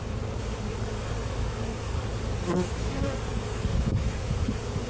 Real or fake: fake